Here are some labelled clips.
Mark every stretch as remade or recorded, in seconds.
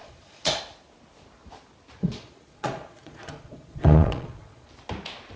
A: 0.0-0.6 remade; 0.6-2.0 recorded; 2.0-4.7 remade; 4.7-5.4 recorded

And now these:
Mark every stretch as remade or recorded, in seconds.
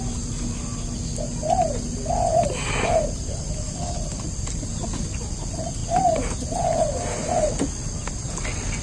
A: 0.0-8.8 recorded